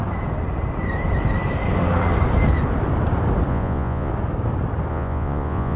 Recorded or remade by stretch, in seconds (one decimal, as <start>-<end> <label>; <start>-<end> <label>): 0.0-3.5 recorded; 3.5-4.1 remade; 4.1-4.9 recorded; 4.9-5.8 remade